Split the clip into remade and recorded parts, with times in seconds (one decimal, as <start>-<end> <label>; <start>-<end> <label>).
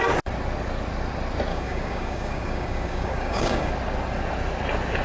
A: 0.0-1.5 recorded; 1.5-3.7 remade; 3.7-5.0 recorded